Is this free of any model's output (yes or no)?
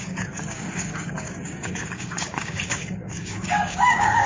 no